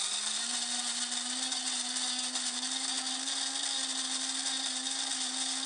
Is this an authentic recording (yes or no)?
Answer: yes